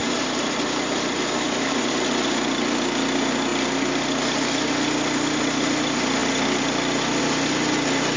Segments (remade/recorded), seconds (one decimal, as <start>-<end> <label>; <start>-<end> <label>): 0.0-1.9 remade; 1.9-8.2 recorded